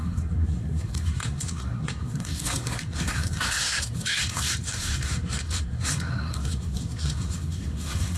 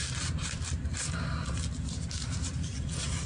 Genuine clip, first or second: second